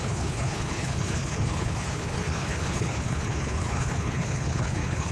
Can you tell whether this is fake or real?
fake